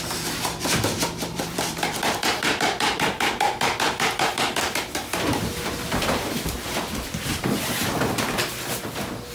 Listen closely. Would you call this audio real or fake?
fake